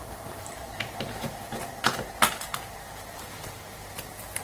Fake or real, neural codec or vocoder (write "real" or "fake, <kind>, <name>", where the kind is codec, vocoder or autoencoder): fake, vocoder, BigVGAN v2